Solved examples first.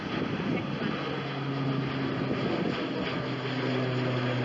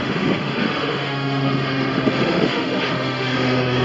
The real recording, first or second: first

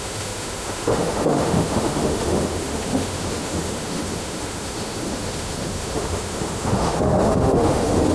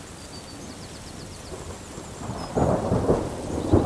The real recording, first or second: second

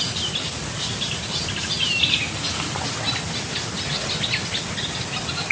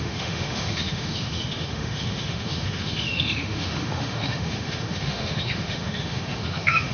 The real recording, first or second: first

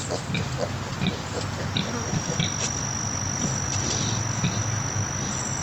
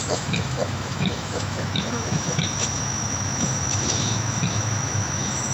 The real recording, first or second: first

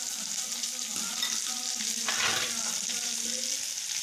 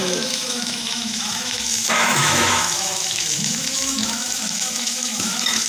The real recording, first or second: first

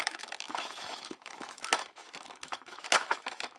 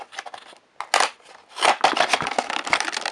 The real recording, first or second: second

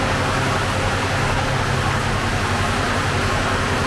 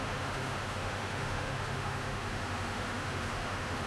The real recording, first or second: first